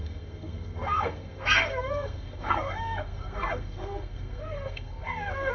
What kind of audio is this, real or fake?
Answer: fake